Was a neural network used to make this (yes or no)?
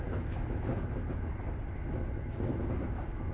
no